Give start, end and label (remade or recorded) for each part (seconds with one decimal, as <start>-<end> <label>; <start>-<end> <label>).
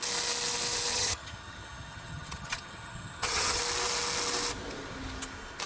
0.0-0.9 recorded; 0.9-3.6 remade; 3.6-5.7 recorded